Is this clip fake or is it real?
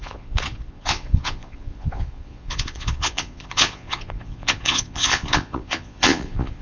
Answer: fake